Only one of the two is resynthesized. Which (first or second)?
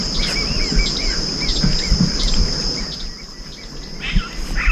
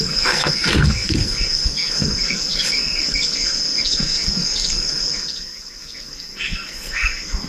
second